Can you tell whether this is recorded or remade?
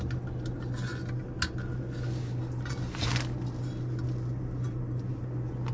recorded